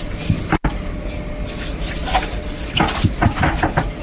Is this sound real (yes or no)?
yes